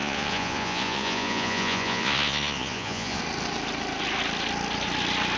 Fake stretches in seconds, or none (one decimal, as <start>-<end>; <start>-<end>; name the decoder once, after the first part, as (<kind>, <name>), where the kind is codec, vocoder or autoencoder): 0.0-3.2 (vocoder, Vocos)